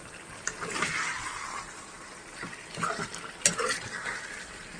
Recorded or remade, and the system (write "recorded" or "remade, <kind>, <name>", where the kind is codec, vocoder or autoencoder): recorded